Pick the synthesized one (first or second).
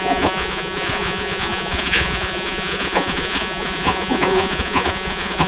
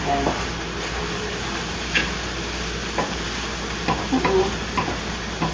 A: first